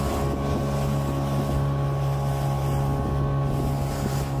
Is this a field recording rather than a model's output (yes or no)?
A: yes